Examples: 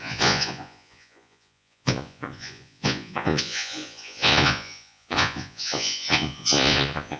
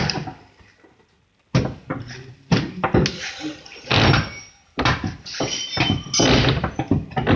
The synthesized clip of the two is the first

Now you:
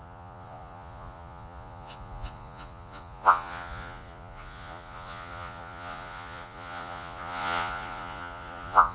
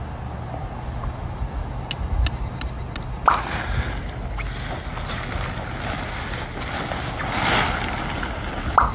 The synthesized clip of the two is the first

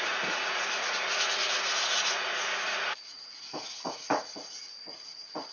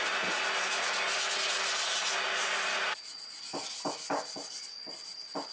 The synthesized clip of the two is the first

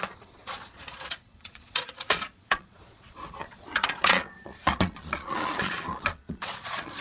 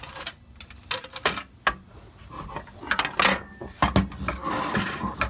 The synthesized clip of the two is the first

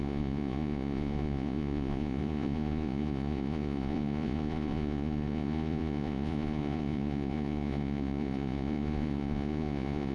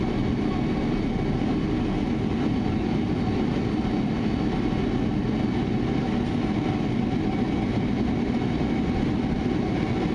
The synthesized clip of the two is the first